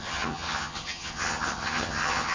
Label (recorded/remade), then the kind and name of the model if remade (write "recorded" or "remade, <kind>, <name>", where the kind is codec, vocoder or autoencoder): remade, vocoder, HiFi-GAN